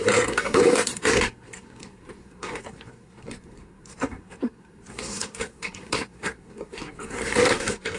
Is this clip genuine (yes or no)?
no